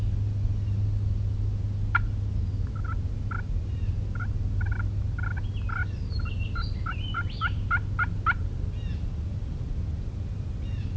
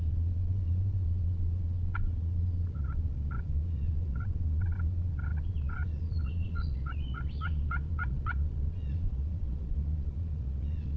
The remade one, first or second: second